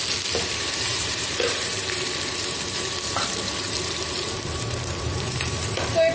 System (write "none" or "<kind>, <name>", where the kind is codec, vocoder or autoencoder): vocoder, BigVGAN v2